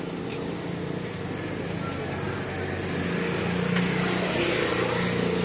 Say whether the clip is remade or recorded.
recorded